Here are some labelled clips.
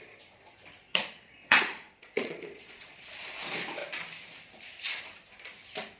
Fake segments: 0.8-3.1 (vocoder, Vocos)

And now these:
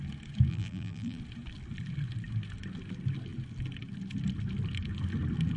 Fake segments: 0.5-1.2 (vocoder, BigVGAN v2)